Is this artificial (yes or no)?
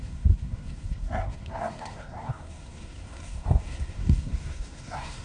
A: yes